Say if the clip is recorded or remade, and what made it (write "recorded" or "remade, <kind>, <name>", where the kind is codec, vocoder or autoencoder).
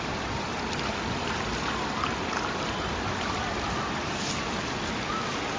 remade, vocoder, BigVGAN v2